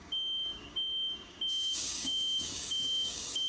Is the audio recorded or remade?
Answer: remade